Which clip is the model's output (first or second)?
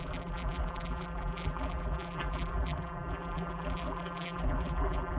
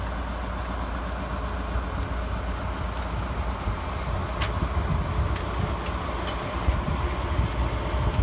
first